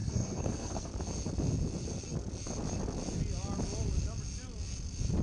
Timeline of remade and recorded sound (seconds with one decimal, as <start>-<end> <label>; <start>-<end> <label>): 0.0-0.9 remade; 0.9-5.2 recorded